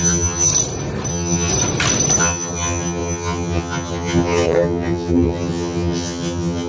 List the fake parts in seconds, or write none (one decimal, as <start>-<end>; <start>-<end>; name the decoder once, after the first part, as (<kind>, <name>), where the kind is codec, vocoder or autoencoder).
0.0-0.5 (vocoder, HiFi-GAN); 1.1-1.5; 2.2-6.7